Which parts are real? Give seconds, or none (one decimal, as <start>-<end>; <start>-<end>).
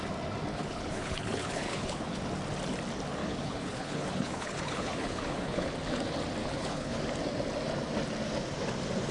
0.0-0.5; 2.2-3.2; 5.7-6.4; 7.0-9.1